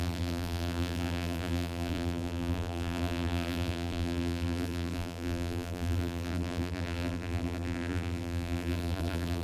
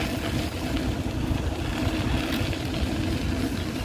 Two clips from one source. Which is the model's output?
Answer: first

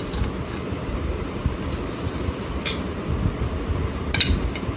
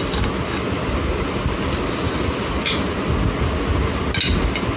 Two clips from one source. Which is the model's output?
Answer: first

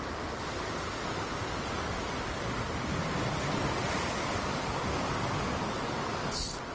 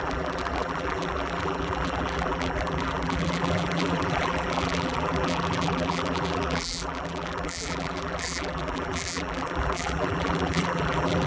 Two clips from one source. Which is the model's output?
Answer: second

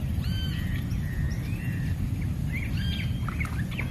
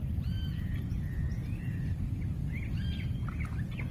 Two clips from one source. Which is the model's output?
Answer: second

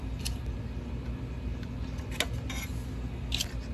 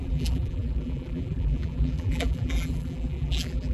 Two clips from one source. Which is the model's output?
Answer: second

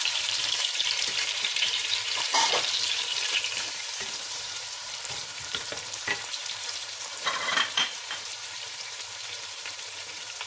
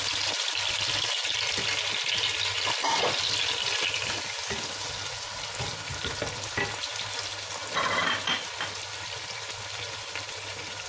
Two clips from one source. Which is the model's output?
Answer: first